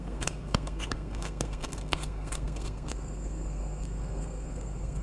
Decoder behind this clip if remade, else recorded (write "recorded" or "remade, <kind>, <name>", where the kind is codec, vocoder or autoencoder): remade, codec, SNAC